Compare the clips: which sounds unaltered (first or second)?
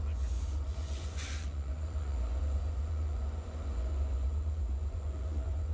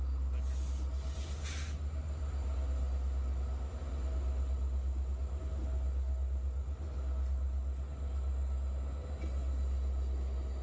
second